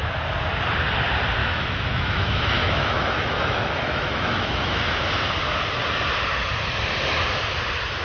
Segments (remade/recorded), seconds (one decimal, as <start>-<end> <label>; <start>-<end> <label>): 0.0-1.4 recorded; 1.4-4.9 remade; 4.9-8.0 recorded